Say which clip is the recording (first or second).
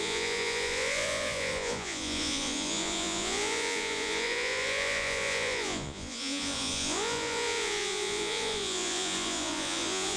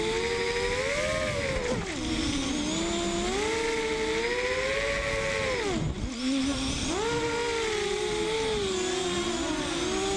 second